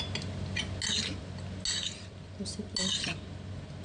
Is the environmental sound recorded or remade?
recorded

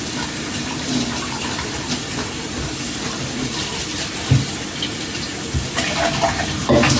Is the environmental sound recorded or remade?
recorded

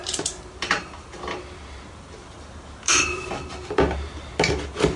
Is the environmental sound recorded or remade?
recorded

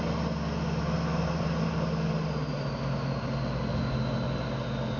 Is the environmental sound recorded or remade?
recorded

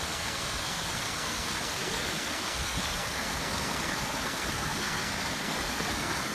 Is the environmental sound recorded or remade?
remade